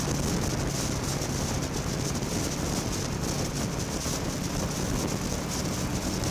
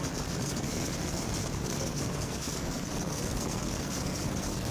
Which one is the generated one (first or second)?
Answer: second